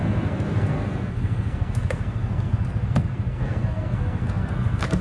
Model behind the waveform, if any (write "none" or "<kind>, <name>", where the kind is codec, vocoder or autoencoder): codec, SNAC